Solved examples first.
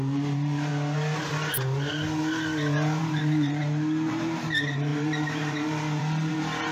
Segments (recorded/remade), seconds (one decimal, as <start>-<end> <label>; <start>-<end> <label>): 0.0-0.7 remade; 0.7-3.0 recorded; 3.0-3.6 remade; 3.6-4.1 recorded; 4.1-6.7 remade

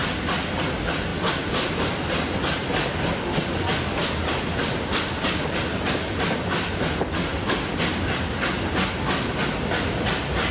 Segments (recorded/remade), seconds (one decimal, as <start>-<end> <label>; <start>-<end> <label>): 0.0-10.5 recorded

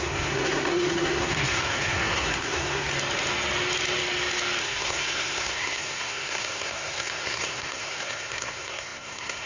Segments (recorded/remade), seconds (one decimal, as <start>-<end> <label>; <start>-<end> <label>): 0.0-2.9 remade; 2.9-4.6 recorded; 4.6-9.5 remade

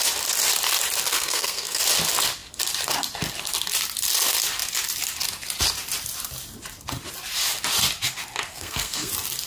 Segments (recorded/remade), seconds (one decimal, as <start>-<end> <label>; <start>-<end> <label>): 0.0-1.1 recorded; 1.1-1.8 remade; 1.8-8.5 recorded; 8.5-9.1 remade; 9.1-9.5 recorded

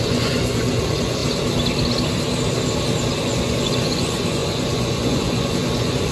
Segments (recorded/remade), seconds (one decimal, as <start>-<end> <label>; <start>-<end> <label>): 0.0-1.2 remade; 1.2-3.2 recorded; 3.2-6.1 remade